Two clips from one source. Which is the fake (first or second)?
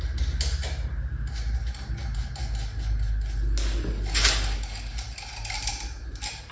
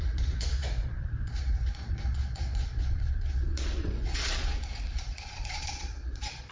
second